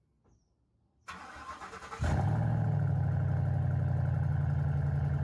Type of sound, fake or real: real